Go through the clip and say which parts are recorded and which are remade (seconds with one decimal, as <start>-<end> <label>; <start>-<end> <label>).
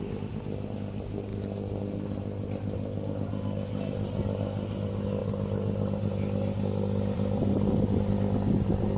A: 0.0-5.2 recorded; 5.2-7.7 remade; 7.7-9.0 recorded